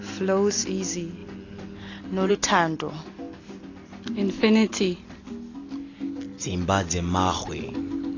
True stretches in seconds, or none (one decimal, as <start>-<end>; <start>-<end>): 0.0-8.2